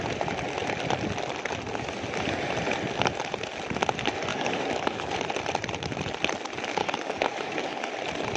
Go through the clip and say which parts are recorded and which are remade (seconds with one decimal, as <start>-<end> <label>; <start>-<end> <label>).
0.0-4.3 recorded; 4.3-5.2 remade; 5.2-6.8 recorded; 6.8-7.9 remade; 7.9-8.4 recorded